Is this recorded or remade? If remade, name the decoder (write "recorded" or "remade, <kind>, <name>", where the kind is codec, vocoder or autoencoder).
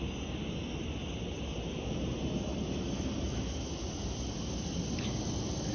recorded